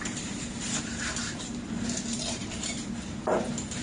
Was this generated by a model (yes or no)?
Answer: yes